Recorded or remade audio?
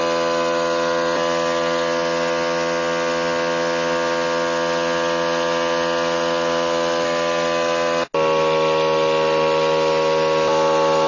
recorded